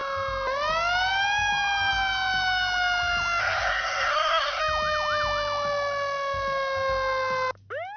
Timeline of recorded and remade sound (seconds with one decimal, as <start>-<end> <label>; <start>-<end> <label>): 0.0-3.4 recorded; 3.4-4.6 remade; 4.6-8.0 recorded